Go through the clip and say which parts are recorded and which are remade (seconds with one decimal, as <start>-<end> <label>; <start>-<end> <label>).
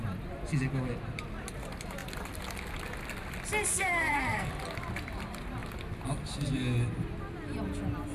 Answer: 0.0-3.7 recorded; 3.7-4.5 remade; 4.5-8.1 recorded